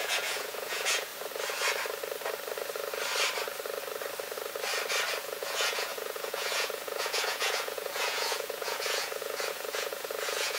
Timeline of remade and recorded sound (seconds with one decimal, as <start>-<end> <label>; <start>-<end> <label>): 0.0-1.1 remade; 1.1-5.2 recorded; 5.2-10.6 remade